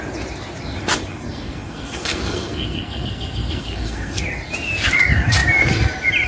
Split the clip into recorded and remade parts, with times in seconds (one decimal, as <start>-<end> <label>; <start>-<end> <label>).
0.0-1.1 recorded; 1.1-4.2 remade; 4.2-6.3 recorded

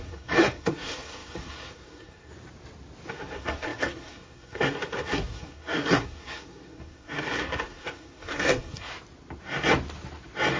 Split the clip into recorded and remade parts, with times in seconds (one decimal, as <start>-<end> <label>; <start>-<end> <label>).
0.0-2.3 remade; 2.3-3.1 recorded; 3.1-8.9 remade; 8.9-10.6 recorded

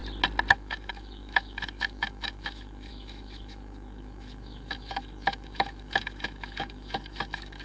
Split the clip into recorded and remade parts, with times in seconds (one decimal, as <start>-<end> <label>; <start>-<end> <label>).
0.0-0.5 recorded; 0.5-7.6 remade

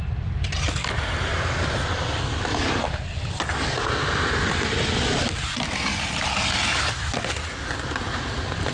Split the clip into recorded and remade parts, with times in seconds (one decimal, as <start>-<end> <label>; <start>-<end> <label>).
0.0-8.7 recorded

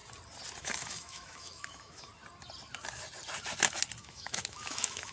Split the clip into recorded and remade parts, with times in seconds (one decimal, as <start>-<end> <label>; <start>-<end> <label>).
0.0-0.6 recorded; 0.6-2.1 remade; 2.1-4.0 recorded; 4.0-5.1 remade